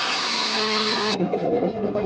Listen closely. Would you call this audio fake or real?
fake